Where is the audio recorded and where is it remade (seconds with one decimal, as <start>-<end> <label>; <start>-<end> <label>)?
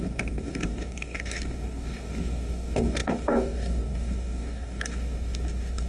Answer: 0.0-5.9 remade